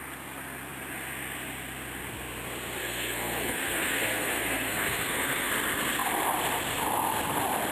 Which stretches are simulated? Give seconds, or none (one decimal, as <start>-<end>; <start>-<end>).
2.8-5.5